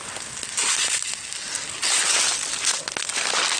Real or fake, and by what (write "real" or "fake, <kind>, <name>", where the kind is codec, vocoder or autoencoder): real